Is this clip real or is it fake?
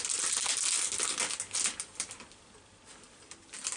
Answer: real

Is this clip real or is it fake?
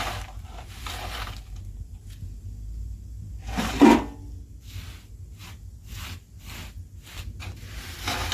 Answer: real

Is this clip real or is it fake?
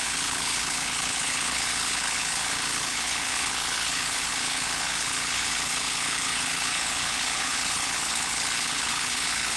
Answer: fake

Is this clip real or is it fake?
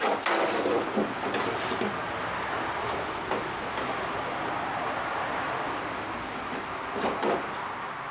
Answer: real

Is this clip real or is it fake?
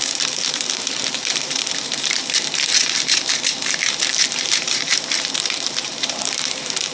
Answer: fake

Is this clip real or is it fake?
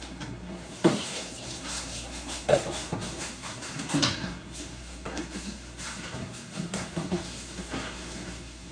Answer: fake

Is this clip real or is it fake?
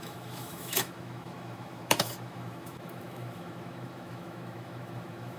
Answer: fake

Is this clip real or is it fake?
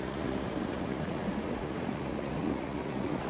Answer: fake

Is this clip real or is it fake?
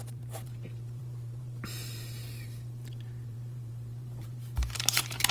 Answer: fake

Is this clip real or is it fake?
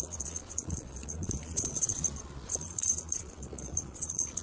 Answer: fake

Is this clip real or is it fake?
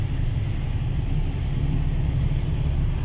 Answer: real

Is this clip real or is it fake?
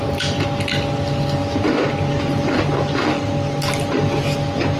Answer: real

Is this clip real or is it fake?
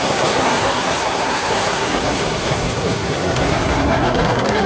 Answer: fake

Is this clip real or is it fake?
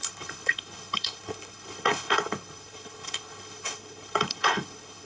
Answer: fake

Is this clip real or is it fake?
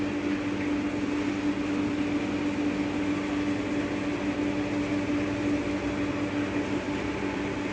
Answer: real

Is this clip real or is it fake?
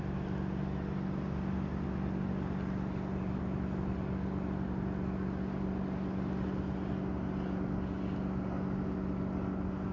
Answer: real